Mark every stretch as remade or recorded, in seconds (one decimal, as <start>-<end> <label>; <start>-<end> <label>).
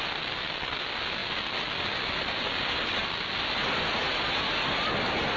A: 0.0-5.4 recorded